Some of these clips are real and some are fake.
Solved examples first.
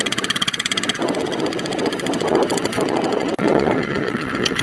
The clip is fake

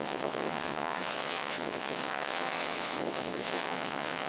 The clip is fake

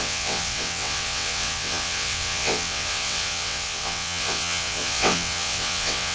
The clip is fake